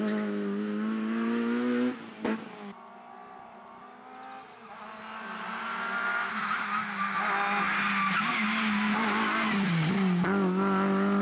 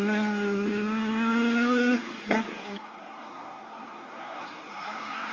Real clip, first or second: first